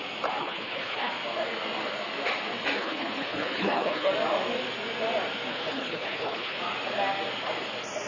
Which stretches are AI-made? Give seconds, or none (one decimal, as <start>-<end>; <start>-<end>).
0.4-1.1; 2.8-4.1; 5.5-6.6